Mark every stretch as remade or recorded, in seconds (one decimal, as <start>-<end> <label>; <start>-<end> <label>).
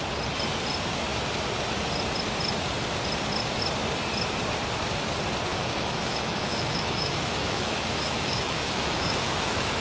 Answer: 0.0-5.5 recorded; 5.5-9.8 remade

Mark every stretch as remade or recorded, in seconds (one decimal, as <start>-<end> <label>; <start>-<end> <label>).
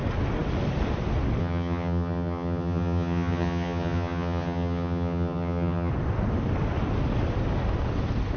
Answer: 0.0-1.4 recorded; 1.4-5.9 remade; 5.9-8.4 recorded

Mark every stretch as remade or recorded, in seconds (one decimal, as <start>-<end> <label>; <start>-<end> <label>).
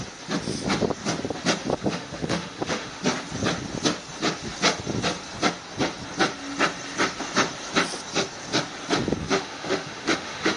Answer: 0.0-1.7 recorded; 1.7-3.0 remade; 3.0-9.2 recorded; 9.2-10.6 remade